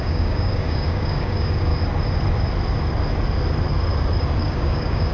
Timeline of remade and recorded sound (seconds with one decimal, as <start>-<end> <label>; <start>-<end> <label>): 0.0-1.7 remade; 1.7-4.4 recorded; 4.4-5.1 remade